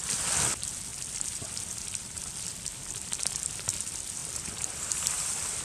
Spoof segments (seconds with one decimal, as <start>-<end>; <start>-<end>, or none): 0.9-2.2; 4.2-4.8